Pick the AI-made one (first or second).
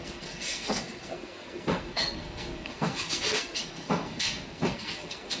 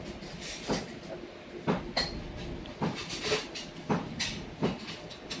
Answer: first